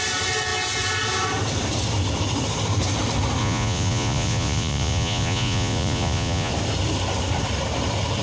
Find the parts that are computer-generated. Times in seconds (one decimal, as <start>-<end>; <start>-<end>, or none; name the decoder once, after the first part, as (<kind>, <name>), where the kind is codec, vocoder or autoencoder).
3.4-6.5 (vocoder, Vocos)